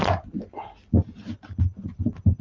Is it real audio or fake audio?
real